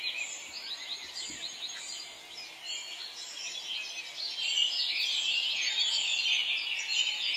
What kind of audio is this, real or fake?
fake